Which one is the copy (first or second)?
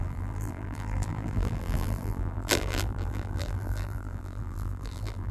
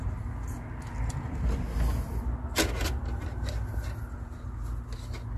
first